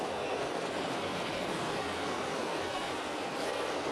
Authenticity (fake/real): fake